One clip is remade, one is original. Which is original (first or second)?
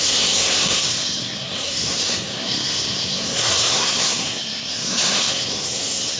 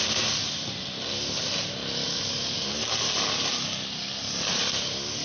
second